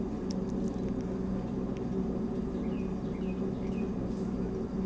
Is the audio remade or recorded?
recorded